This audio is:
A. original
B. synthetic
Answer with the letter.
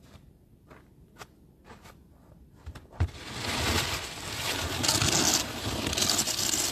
A